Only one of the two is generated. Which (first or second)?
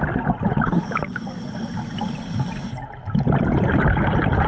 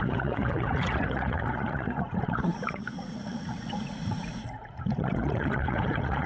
second